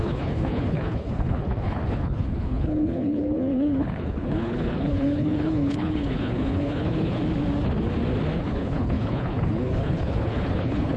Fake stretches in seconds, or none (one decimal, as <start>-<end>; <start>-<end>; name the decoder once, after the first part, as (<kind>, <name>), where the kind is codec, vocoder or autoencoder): 0.0-7.2 (codec, HILCodec); 8.4-11.0